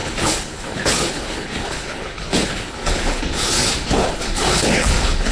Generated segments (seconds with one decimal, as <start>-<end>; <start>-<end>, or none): 0.0-5.3